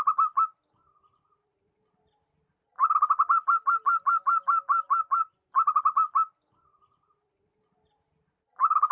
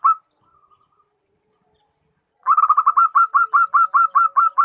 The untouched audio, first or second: first